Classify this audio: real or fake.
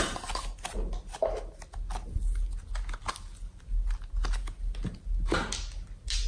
real